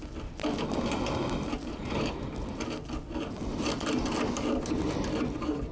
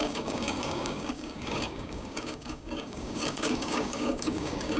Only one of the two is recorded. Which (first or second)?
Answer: first